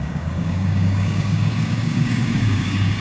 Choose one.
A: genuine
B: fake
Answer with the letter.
B